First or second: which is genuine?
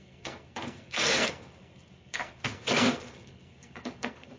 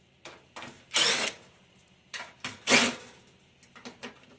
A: second